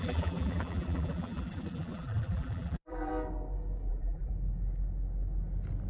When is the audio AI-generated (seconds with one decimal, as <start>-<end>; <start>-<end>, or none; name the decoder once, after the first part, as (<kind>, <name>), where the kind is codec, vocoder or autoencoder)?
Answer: 0.0-3.1 (vocoder, BigVGAN v2); 3.9-4.3